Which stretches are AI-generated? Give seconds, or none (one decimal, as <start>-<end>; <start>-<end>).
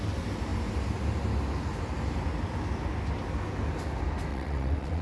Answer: 4.3-5.0